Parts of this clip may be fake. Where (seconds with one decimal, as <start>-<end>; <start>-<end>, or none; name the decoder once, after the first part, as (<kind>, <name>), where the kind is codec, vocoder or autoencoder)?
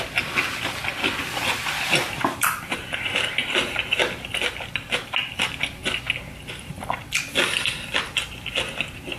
none